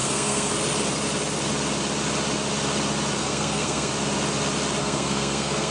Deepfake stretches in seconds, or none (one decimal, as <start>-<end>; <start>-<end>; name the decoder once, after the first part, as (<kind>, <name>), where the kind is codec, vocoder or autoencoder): 0.0-0.5 (codec, SNAC); 3.2-3.9; 4.8-5.7